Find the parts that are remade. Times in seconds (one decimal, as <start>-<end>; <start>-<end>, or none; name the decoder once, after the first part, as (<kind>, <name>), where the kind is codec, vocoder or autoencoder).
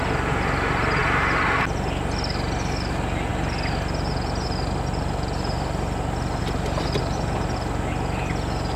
none